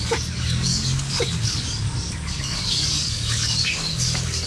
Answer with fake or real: fake